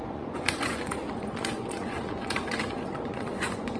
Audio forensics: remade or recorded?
remade